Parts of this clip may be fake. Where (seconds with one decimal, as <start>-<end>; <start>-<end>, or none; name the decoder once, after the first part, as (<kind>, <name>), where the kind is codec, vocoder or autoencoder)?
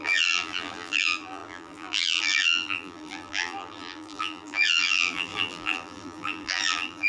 0.0-7.1 (vocoder, BigVGAN v2)